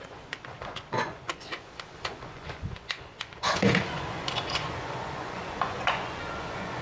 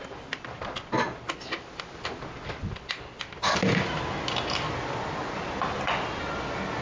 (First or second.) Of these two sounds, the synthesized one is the first